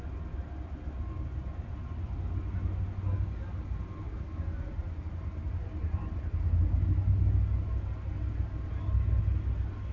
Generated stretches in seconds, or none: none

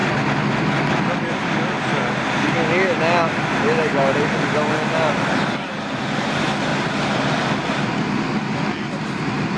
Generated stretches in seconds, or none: none

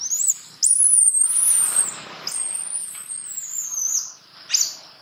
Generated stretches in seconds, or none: none

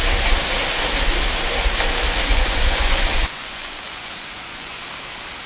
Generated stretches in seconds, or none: 2.3-4.8

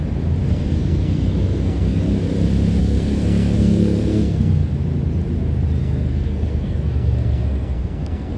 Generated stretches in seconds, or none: 0.4-2.0; 2.8-4.7; 5.8-8.4

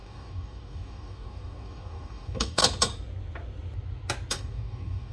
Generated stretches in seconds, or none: 0.0-2.6; 4.3-5.1